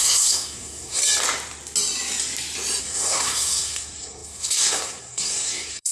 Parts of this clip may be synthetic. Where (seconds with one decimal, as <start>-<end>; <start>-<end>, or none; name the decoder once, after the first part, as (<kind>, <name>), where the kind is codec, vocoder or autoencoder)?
0.0-1.0 (codec, SNAC); 2.8-5.9